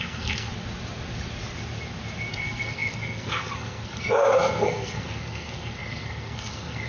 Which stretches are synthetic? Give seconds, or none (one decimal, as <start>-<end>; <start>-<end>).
0.0-0.5; 2.3-6.9